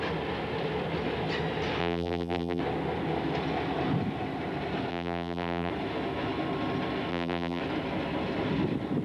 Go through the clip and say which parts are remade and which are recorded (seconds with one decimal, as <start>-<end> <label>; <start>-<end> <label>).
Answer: 0.0-1.8 recorded; 1.8-2.6 remade; 2.6-4.9 recorded; 4.9-5.7 remade; 5.7-7.1 recorded; 7.1-7.6 remade; 7.6-9.0 recorded

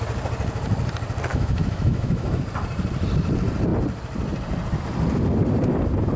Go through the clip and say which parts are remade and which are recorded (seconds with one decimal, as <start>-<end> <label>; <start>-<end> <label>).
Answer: 0.0-1.3 recorded; 1.3-2.4 remade; 2.4-6.2 recorded